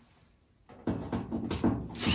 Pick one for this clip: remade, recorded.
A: recorded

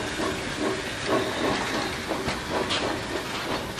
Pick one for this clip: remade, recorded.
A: recorded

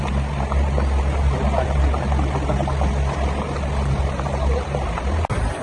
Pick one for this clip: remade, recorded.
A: recorded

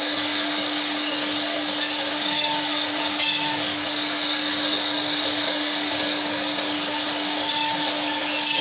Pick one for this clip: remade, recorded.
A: remade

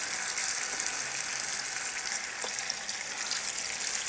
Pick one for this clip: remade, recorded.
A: recorded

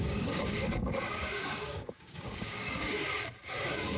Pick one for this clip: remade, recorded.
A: remade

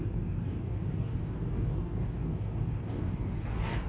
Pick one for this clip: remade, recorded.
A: remade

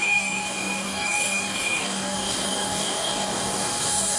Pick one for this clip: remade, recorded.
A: remade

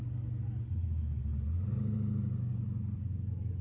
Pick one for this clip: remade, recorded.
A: recorded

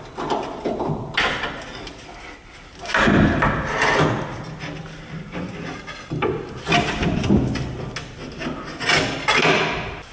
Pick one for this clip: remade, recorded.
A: recorded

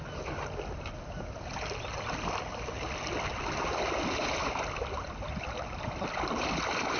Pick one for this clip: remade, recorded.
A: recorded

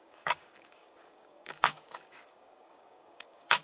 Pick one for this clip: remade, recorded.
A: remade